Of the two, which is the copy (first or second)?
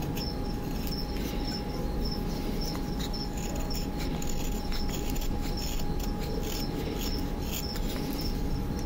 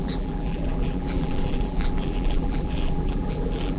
second